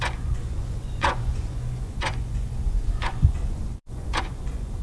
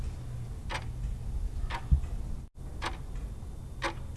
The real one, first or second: second